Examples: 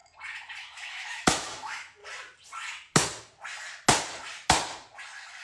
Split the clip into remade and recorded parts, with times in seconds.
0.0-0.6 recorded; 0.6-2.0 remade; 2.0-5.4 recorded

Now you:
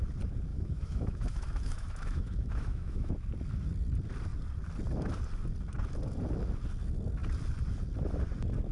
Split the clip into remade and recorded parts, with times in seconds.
0.0-0.5 recorded; 0.5-3.1 remade; 3.1-8.7 recorded

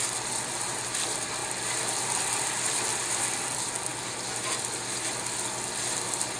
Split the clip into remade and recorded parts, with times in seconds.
0.0-6.4 recorded

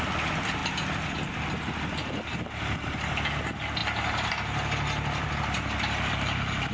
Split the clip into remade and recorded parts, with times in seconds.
0.0-6.7 recorded